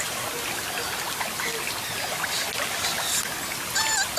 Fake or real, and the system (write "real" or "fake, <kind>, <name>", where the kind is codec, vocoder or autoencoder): real